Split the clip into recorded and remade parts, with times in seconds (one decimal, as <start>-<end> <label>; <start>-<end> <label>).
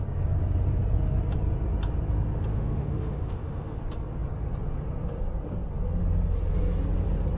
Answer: 0.0-2.5 recorded; 2.5-3.8 remade; 3.8-7.4 recorded